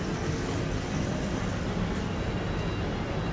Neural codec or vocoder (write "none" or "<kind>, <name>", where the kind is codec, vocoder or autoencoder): none